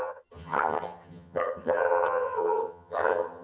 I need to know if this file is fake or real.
fake